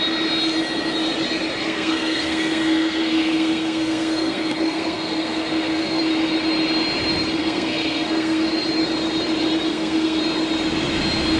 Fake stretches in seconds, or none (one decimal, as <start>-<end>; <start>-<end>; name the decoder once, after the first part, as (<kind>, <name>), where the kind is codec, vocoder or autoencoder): 1.6-6.0 (codec, SNAC); 7.4-8.5; 9.7-10.2